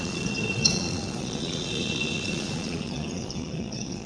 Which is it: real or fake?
fake